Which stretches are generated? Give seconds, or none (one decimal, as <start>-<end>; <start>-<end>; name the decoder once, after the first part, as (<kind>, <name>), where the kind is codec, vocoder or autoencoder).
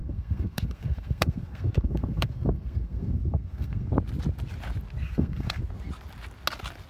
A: 0.0-3.9 (codec, SNAC); 5.0-5.6